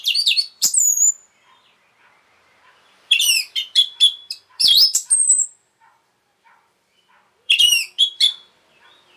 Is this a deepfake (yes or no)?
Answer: yes